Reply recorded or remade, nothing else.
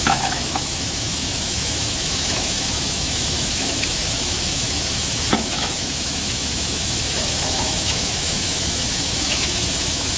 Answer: remade